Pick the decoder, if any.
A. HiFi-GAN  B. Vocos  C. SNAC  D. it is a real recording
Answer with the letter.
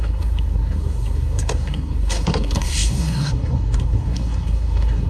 C